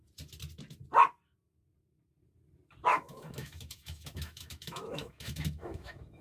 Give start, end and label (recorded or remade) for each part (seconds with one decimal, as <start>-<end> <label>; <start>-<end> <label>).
0.0-2.9 recorded; 2.9-6.2 remade